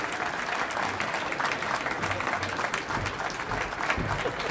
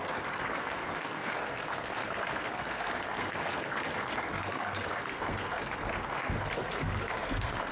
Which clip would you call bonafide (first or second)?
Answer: first